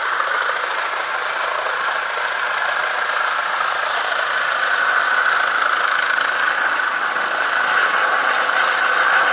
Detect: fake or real real